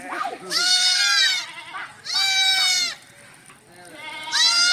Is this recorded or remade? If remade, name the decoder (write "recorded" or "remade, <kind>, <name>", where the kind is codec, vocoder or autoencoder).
remade, vocoder, BigVGAN v2